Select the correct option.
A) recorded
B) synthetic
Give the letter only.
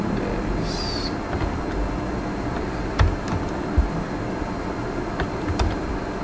A